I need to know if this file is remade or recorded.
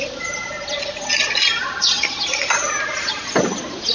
recorded